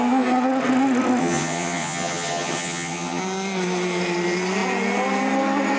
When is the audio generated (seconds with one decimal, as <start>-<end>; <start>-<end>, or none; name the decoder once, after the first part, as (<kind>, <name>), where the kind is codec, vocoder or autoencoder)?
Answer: 1.2-3.2 (vocoder, HiFi-GAN)